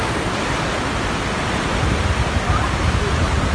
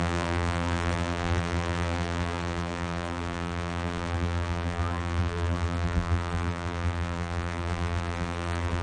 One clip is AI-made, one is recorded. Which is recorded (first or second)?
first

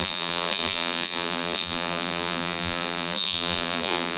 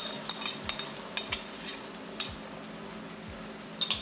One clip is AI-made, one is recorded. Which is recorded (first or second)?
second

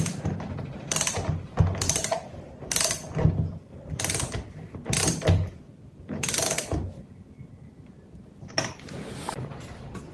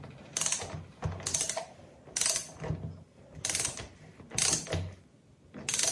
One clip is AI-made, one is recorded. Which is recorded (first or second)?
second